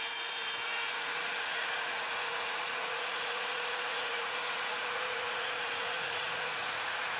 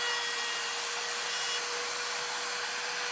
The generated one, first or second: first